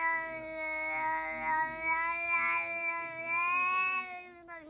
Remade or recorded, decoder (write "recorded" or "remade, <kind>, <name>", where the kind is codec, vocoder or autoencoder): recorded